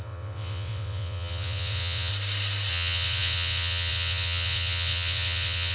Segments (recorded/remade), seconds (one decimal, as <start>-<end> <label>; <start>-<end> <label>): 0.0-2.1 remade; 2.1-2.7 recorded; 2.7-5.7 remade